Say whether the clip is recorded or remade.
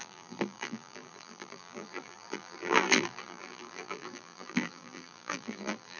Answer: remade